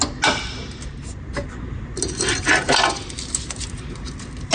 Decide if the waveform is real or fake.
real